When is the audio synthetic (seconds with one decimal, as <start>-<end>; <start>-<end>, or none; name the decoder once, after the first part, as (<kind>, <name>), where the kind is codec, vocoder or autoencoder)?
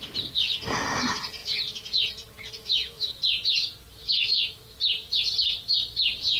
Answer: 2.6-3.2 (autoencoder, DAC-VAE); 4.0-4.6